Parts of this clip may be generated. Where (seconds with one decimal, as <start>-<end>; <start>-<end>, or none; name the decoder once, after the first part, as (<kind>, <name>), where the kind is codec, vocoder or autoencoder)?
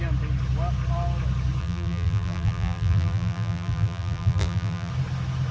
1.6-4.9 (vocoder, BigVGAN v2)